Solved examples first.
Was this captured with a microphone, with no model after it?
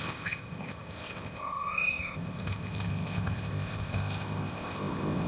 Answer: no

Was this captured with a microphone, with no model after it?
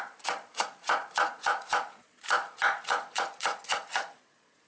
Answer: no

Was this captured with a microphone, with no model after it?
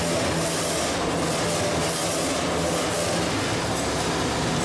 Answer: yes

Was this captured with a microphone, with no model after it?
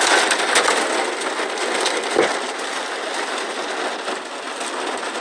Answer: yes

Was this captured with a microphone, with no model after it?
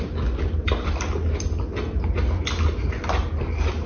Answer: yes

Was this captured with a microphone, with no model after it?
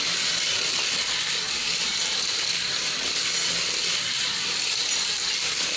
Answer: yes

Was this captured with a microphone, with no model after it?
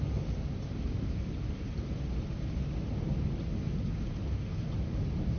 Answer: yes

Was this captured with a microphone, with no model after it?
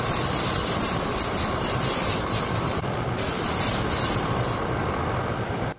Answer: no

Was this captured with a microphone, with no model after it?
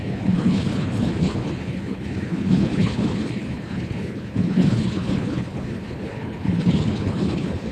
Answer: no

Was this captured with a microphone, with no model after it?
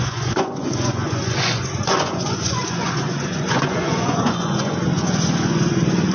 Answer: no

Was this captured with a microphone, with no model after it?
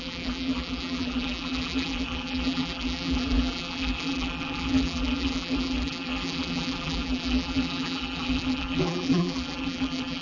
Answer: no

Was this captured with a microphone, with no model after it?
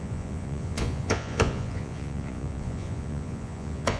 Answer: no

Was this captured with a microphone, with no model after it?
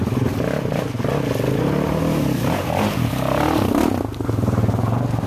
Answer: yes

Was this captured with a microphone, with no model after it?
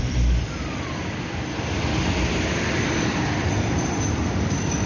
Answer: no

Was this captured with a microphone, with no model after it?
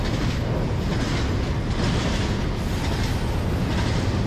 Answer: yes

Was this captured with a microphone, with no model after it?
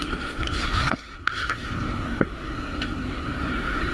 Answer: no